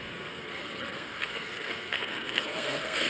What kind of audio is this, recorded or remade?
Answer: remade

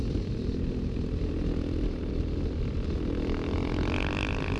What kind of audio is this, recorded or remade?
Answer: recorded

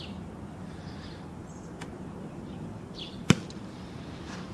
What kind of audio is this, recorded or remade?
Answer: recorded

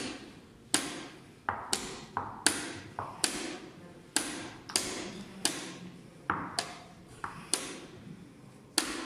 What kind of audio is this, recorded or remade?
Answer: recorded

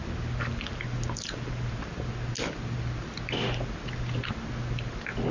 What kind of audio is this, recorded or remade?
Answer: recorded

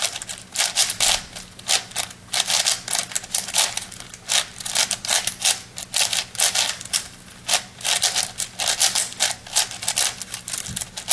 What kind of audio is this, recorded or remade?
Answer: recorded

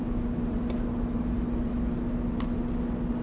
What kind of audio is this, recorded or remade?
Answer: recorded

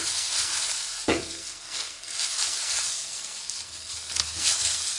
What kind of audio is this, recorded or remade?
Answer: remade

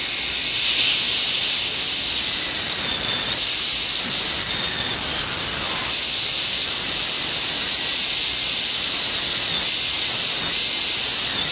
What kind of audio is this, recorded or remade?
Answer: recorded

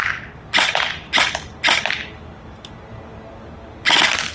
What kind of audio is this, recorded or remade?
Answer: recorded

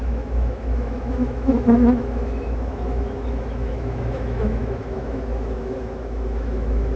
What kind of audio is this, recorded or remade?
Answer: remade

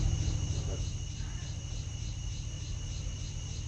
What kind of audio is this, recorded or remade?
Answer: recorded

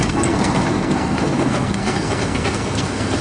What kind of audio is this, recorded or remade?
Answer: remade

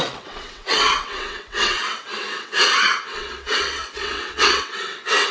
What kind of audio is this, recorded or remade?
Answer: remade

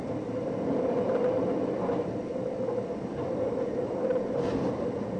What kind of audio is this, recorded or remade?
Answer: remade